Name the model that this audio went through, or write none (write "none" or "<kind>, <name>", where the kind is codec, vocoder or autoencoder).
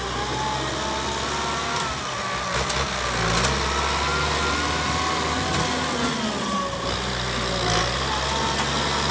none